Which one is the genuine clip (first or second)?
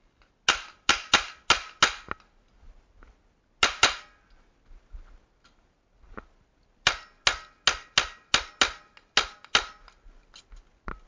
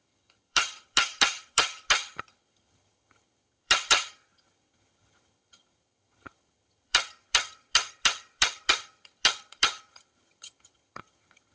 first